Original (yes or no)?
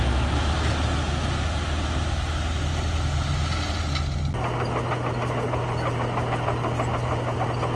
yes